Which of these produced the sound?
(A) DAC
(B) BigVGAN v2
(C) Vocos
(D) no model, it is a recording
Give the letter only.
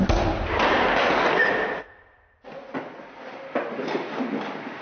D